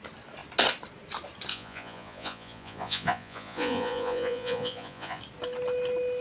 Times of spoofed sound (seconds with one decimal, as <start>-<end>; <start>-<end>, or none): 1.5-5.2